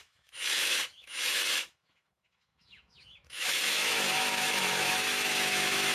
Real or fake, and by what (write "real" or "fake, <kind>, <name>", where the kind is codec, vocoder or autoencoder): fake, autoencoder, DAC-VAE